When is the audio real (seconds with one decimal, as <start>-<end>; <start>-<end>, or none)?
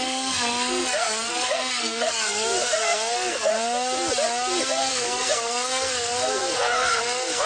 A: 3.5-4.6